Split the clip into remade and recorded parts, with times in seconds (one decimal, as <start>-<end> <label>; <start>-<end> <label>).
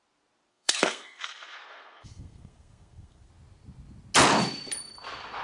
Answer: 0.0-0.5 recorded; 0.5-3.3 remade; 3.3-5.4 recorded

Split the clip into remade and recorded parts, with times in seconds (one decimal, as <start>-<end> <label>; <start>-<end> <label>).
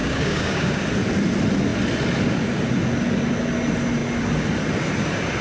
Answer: 0.0-0.8 remade; 0.8-5.4 recorded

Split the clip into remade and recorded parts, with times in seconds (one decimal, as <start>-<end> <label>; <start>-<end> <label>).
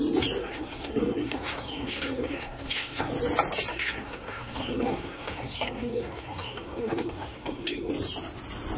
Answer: 0.0-0.4 recorded; 0.4-3.1 remade; 3.1-3.7 recorded; 3.7-7.9 remade; 7.9-8.8 recorded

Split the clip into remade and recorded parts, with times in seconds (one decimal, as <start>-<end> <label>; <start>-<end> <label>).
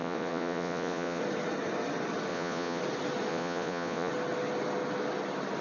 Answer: 0.0-1.2 remade; 1.2-2.3 recorded; 2.3-2.8 remade; 2.8-3.3 recorded; 3.3-4.1 remade; 4.1-5.6 recorded